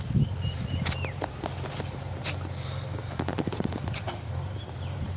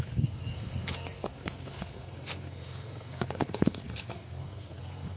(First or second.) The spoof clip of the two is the second